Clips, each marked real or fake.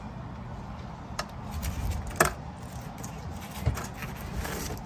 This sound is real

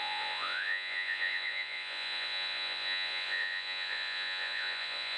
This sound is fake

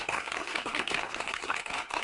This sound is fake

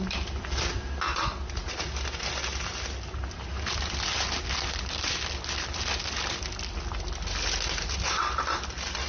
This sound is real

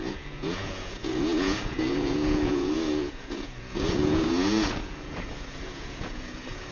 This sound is fake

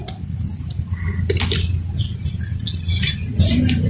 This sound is real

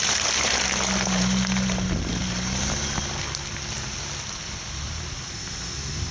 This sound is real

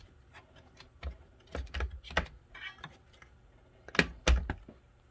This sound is real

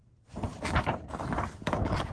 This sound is real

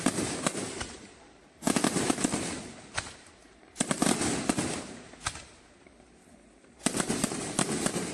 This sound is fake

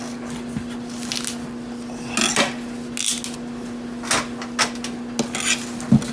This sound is real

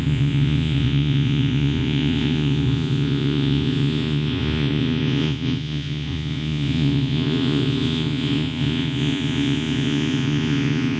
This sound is fake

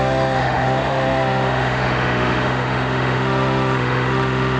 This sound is fake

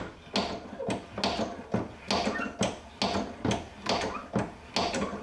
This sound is real